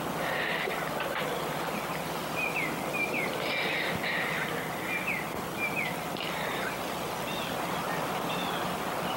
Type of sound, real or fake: real